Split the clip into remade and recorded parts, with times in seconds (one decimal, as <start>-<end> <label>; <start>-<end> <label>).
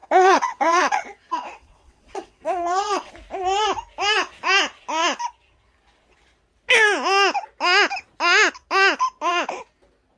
0.0-3.1 remade; 3.1-10.2 recorded